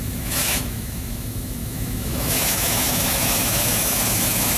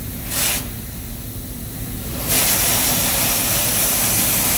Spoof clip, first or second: first